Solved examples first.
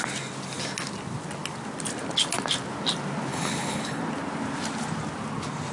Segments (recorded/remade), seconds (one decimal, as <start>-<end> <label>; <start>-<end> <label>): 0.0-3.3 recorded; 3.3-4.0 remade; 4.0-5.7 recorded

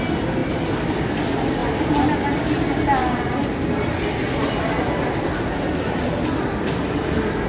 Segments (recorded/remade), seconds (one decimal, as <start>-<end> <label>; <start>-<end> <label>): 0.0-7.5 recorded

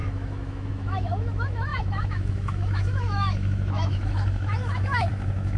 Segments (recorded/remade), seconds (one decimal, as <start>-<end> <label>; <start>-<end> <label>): 0.0-5.6 remade

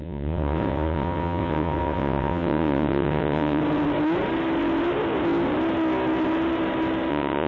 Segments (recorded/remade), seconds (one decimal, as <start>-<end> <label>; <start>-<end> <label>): 0.0-3.6 remade; 3.6-7.1 recorded; 7.1-7.5 remade

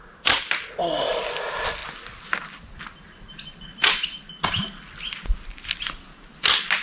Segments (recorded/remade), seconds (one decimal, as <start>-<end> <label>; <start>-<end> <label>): 0.0-6.8 recorded